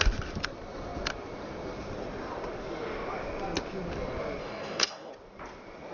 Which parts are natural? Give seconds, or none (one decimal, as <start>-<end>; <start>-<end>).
0.0-4.4; 5.1-5.9